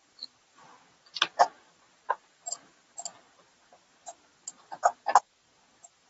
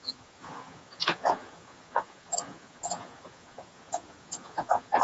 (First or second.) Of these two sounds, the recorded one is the first